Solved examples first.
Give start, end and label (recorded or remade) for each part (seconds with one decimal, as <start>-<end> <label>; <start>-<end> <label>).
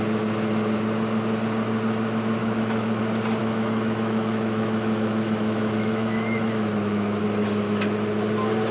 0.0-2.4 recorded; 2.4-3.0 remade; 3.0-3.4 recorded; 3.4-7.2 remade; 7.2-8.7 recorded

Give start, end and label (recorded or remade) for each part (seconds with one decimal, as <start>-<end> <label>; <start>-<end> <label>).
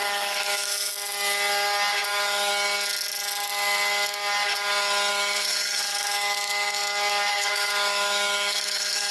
0.0-0.9 remade; 0.9-2.1 recorded; 2.1-2.5 remade; 2.5-5.1 recorded; 5.1-6.8 remade; 6.8-7.3 recorded; 7.3-9.1 remade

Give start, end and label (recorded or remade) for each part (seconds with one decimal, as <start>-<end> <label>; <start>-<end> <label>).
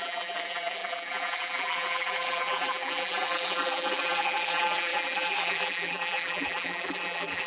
0.0-7.5 remade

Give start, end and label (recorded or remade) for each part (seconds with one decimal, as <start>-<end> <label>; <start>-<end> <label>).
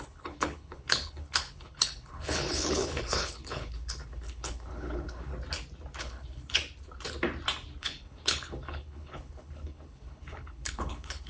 0.0-5.3 remade; 5.3-6.0 recorded; 6.0-6.6 remade; 6.6-7.8 recorded; 7.8-11.3 remade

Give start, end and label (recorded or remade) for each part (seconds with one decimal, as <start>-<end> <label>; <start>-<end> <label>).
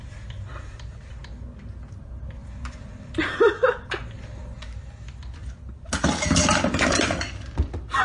0.0-8.0 recorded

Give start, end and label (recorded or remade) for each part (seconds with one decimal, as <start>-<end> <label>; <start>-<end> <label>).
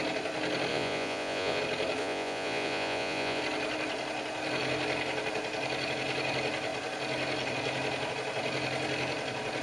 0.0-0.7 recorded; 0.7-1.6 remade; 1.6-2.0 recorded; 2.0-3.4 remade; 3.4-9.6 recorded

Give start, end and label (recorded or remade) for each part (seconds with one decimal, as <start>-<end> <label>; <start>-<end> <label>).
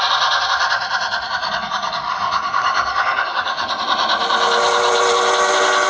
0.0-1.4 recorded; 1.4-3.7 remade; 3.7-5.9 recorded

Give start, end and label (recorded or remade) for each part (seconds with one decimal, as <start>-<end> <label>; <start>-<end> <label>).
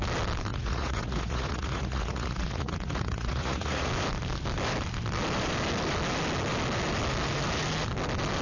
0.0-0.5 recorded; 0.5-3.9 remade; 3.9-8.4 recorded